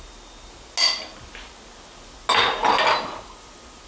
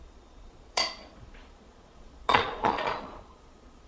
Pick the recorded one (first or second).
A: first